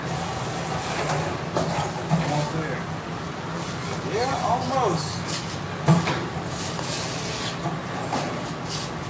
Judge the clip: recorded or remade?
recorded